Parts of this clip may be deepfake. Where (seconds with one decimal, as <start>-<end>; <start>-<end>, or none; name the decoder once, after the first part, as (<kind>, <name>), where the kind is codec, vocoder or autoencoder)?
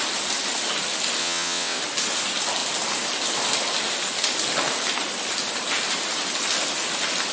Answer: 1.2-1.8 (vocoder, WaveNeXt)